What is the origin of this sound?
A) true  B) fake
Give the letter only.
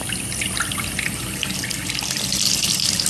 A